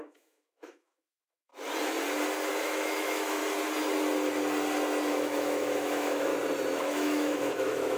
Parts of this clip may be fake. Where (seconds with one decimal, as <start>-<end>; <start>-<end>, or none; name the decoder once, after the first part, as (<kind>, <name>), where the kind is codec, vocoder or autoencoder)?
0.0-1.5 (autoencoder, DAC-VAE); 2.6-3.4; 5.1-6.3; 6.8-8.0